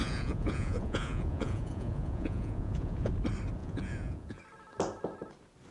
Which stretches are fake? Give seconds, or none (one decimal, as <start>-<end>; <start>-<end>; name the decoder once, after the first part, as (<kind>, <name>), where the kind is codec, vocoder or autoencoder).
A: 0.0-3.1 (vocoder, Vocos); 3.6-4.4